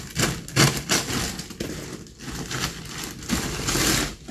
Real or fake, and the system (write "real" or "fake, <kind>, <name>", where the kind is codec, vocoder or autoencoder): real